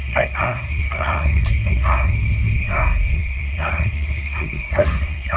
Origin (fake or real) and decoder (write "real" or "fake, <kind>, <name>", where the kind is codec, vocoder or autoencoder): fake, codec, SNAC